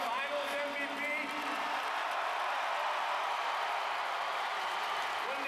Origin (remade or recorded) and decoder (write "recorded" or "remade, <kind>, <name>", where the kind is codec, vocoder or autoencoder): recorded